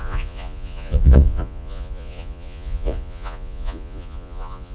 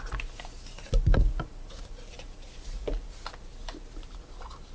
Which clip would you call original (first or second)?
second